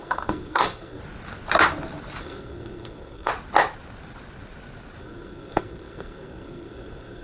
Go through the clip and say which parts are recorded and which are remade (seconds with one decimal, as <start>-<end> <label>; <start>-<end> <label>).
0.0-1.0 remade; 1.0-2.2 recorded; 2.2-3.3 remade; 3.3-5.0 recorded; 5.0-7.2 remade